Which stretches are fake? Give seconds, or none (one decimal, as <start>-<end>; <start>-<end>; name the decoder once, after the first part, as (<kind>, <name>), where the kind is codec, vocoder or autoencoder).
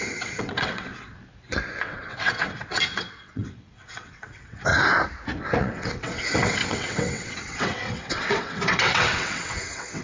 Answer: 0.0-0.9 (vocoder, WaveNeXt); 1.8-4.7; 5.6-10.0